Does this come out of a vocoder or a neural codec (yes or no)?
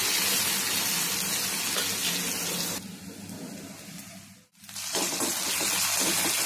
no